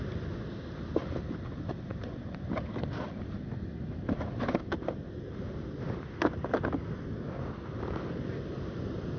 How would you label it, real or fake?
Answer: real